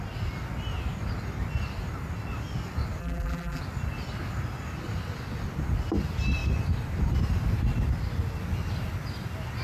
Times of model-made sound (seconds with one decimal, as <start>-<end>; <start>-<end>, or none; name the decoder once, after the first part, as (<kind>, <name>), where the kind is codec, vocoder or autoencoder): 3.0-3.6 (vocoder, BigVGAN v2)